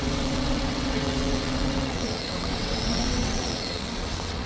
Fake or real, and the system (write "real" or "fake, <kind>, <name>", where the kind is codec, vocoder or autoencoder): fake, vocoder, WaveNeXt